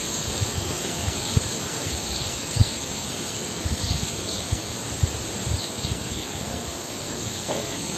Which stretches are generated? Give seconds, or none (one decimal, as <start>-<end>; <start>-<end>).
0.0-4.8; 5.6-8.0